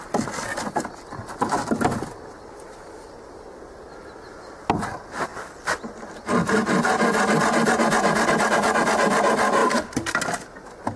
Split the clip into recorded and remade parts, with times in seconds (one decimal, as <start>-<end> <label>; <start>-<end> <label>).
0.0-11.0 recorded